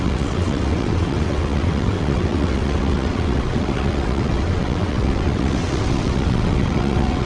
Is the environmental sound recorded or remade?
remade